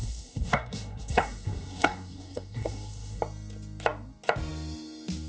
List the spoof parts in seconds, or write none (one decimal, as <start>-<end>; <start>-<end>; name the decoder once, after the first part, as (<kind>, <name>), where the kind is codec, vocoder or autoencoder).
0.0-3.2 (codec, SNAC)